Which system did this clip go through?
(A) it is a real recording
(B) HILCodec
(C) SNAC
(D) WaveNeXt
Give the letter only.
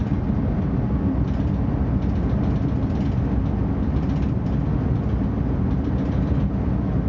A